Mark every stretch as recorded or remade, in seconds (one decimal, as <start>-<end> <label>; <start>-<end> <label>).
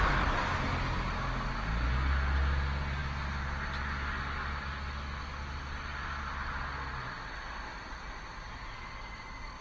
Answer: 0.0-9.6 recorded